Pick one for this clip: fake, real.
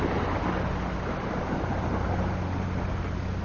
real